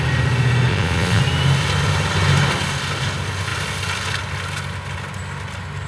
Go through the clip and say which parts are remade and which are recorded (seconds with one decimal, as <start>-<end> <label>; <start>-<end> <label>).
0.0-0.7 recorded; 0.7-1.2 remade; 1.2-5.9 recorded